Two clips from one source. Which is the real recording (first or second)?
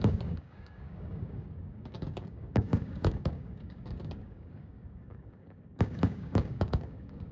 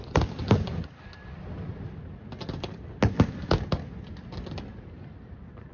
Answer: second